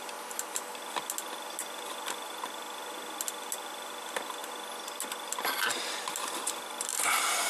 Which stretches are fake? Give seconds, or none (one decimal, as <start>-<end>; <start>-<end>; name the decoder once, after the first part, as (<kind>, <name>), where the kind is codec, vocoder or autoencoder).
none